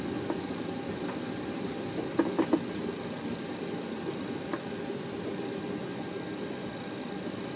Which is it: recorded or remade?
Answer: recorded